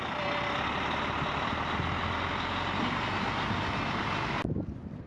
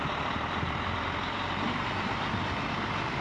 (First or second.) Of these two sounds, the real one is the first